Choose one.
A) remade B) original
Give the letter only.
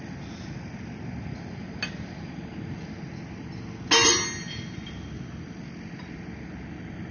B